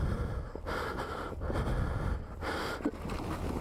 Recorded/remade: recorded